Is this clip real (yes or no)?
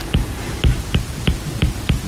yes